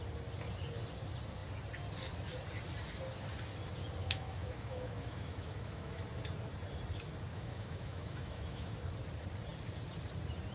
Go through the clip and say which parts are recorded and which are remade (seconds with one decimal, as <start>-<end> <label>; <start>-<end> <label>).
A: 0.0-4.0 recorded; 4.0-6.0 remade; 6.0-7.3 recorded; 7.3-8.8 remade; 8.8-10.5 recorded